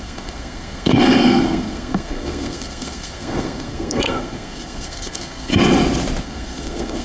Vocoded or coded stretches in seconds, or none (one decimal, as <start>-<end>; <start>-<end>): 0.0-5.5; 6.2-7.0